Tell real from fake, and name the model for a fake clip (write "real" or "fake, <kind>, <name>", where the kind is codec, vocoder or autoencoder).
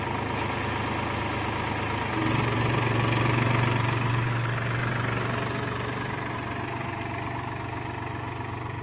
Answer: real